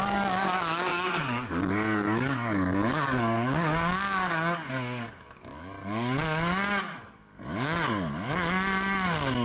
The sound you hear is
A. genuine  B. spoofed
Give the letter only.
B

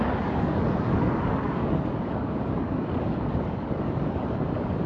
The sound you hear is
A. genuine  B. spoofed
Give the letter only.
B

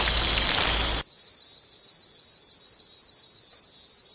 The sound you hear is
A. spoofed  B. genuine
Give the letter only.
B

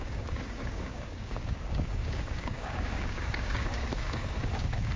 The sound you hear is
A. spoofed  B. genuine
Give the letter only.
A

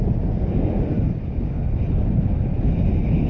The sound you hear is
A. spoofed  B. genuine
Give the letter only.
B